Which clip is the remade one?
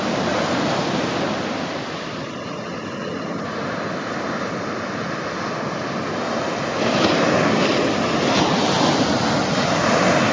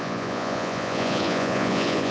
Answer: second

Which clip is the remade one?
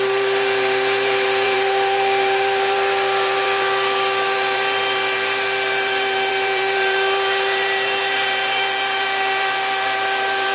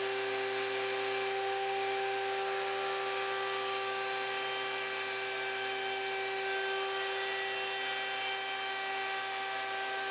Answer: first